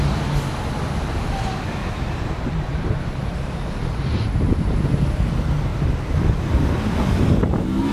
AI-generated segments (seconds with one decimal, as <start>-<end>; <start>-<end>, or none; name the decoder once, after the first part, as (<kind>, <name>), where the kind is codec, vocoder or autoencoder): 1.8-5.3 (vocoder, BigVGAN v2)